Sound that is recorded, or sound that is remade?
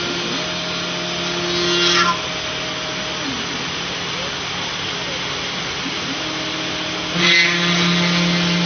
recorded